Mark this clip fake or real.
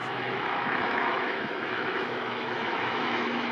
fake